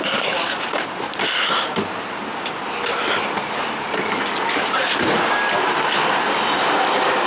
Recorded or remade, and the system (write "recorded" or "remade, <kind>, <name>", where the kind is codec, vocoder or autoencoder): recorded